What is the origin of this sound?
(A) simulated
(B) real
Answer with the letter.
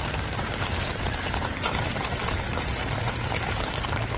A